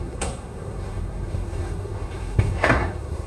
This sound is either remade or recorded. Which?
remade